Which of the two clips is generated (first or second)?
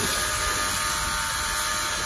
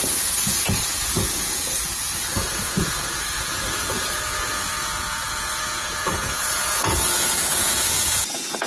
second